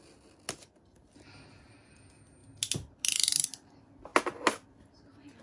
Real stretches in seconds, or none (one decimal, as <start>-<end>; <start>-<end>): 0.0-5.4